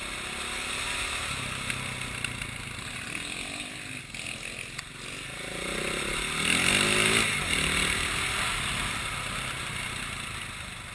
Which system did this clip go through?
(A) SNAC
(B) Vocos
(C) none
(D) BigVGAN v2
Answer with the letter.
C